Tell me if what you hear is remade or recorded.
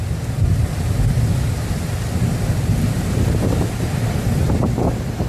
recorded